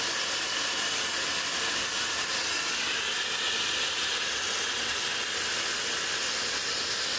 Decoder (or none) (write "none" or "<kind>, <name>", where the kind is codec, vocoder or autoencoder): none